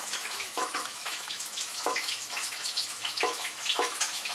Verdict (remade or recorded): remade